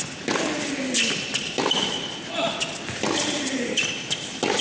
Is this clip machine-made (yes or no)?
no